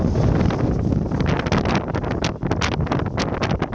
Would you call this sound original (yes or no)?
yes